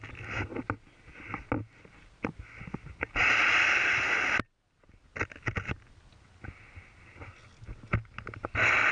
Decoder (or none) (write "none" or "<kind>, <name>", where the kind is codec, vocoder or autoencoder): none